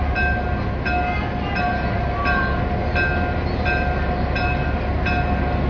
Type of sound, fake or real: real